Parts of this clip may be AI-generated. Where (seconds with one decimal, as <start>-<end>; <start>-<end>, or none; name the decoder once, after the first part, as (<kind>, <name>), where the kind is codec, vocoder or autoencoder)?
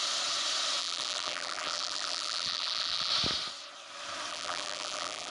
0.8-3.1 (vocoder, BigVGAN v2); 4.3-5.3